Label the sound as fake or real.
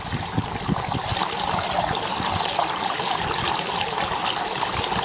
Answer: real